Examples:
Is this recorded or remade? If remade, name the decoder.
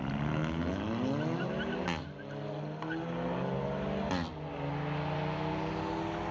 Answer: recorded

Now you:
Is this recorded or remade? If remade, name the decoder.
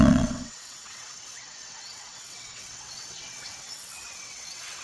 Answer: remade, vocoder, WaveNeXt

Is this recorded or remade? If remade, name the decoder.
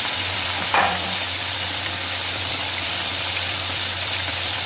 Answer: remade, vocoder, BigVGAN v2